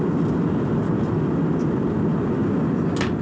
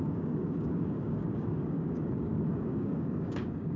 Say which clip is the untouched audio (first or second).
first